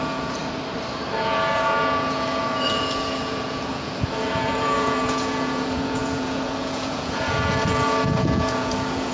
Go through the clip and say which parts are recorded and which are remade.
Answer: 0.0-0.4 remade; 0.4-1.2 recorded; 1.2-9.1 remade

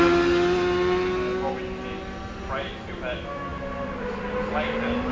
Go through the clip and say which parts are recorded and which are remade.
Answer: 0.0-5.1 recorded

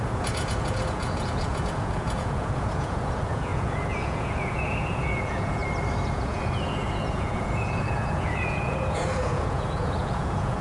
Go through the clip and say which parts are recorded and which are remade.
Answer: 0.0-5.6 remade; 5.6-6.1 recorded; 6.1-10.6 remade

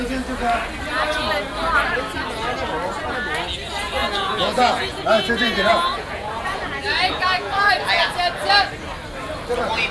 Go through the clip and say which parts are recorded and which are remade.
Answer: 0.0-4.0 recorded; 4.0-7.7 remade; 7.7-9.9 recorded

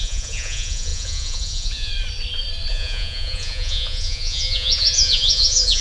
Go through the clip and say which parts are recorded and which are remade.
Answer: 0.0-1.9 remade; 1.9-2.7 recorded; 2.7-5.8 remade

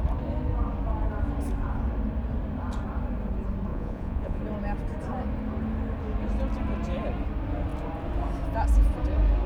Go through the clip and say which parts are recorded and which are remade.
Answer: 0.0-3.7 recorded; 3.7-4.4 remade; 4.4-9.5 recorded

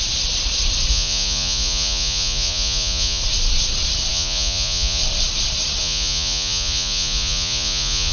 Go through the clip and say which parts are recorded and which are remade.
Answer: 0.0-0.9 recorded; 0.9-3.2 remade; 3.2-4.1 recorded; 4.1-5.0 remade; 5.0-5.8 recorded; 5.8-8.1 remade

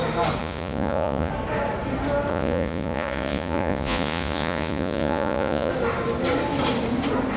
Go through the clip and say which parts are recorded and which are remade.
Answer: 0.0-0.4 recorded; 0.4-1.3 remade; 1.3-2.3 recorded; 2.3-5.7 remade; 5.7-7.4 recorded